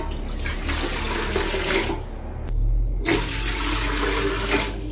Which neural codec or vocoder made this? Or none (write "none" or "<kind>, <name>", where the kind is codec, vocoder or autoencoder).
none